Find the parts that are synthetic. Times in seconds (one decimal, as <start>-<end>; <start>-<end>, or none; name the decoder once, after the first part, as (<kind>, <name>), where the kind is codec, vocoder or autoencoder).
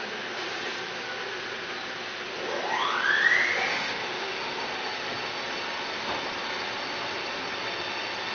3.7-4.7 (autoencoder, DAC-VAE)